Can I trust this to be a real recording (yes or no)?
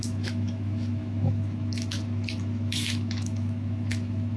no